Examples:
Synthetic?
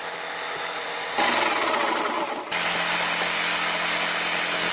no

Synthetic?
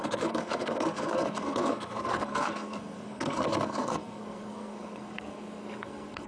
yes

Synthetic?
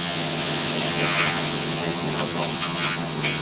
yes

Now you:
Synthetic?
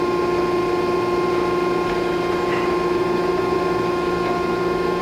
no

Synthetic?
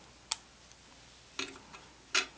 no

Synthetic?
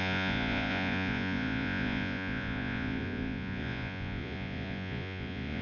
yes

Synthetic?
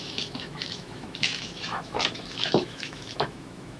yes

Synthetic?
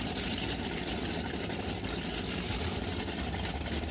no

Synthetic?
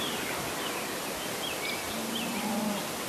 no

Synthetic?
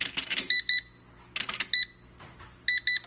no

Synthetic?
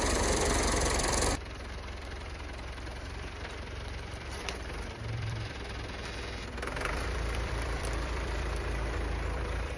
yes